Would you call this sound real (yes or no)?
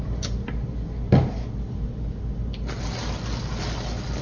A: yes